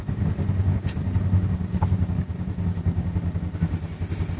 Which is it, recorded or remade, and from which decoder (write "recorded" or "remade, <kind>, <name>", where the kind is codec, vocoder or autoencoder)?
recorded